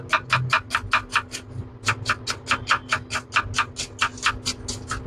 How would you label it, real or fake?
real